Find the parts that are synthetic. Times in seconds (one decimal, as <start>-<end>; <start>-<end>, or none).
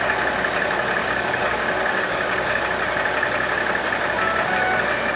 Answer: 1.0-2.6